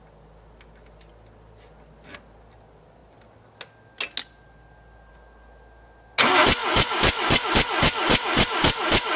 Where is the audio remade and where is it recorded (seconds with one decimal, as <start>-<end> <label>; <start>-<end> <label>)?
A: 0.0-9.2 recorded